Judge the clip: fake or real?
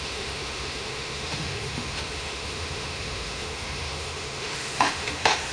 fake